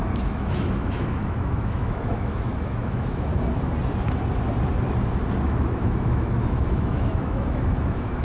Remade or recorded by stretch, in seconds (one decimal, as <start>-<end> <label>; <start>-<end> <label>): 0.0-3.3 remade; 3.3-5.4 recorded; 5.4-8.2 remade

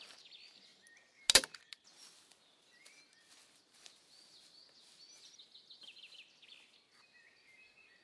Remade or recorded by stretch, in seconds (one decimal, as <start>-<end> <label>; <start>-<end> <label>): 0.0-8.0 recorded

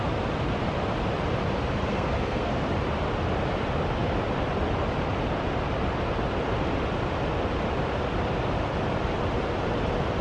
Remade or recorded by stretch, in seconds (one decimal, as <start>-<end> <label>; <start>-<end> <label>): 0.0-1.9 recorded; 1.9-2.5 remade; 2.5-10.2 recorded

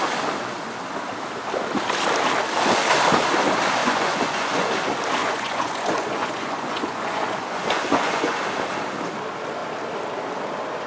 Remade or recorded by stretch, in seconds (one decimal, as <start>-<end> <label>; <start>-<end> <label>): 0.0-3.8 recorded; 3.8-4.7 remade; 4.7-5.2 recorded; 5.2-8.4 remade; 8.4-10.9 recorded

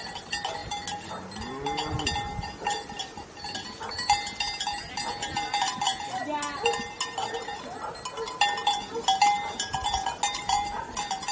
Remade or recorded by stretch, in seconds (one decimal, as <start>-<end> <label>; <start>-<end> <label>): 0.0-11.3 recorded